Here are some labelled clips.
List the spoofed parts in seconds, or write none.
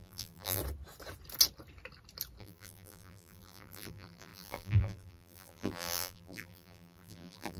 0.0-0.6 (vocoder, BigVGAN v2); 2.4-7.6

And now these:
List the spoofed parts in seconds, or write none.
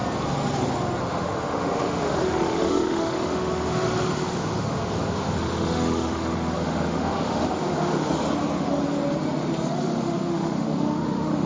1.0-8.1 (autoencoder, DAC-VAE); 9.8-11.5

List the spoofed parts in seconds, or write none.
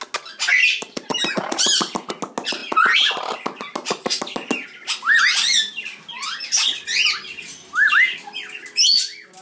0.6-2.1 (vocoder, BigVGAN v2)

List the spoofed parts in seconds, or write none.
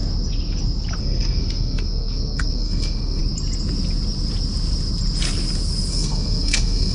1.0-3.2 (codec, SNAC); 5.9-6.9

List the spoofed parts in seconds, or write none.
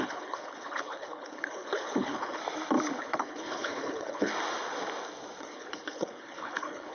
0.0-2.4 (codec, HILCodec); 3.0-4.3; 5.4-6.9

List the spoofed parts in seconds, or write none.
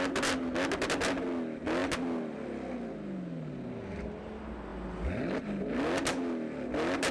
none